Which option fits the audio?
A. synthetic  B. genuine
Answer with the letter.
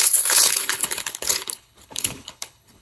A